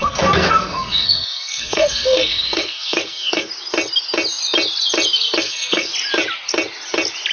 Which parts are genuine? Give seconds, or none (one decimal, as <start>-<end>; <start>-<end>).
3.5-5.4; 5.9-7.3